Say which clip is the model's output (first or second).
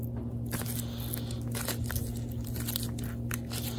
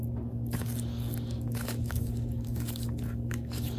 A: second